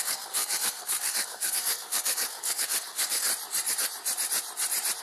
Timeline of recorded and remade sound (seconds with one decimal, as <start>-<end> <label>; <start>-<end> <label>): 0.0-3.3 remade; 3.3-5.0 recorded